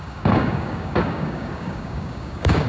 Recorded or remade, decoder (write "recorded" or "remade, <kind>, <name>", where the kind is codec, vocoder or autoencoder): remade, codec, DAC